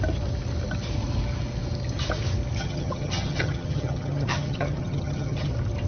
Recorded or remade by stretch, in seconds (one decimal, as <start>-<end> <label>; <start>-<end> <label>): 0.0-2.6 recorded; 2.6-5.5 remade; 5.5-5.9 recorded